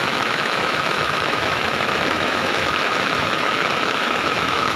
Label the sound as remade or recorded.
remade